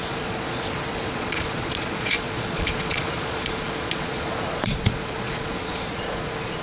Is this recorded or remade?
remade